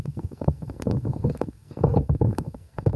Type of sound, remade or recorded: remade